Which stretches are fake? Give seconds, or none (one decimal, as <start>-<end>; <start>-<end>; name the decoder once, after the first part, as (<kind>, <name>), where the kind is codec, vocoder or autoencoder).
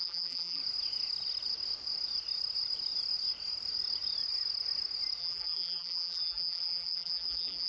0.0-0.6 (vocoder, BigVGAN v2); 5.2-7.7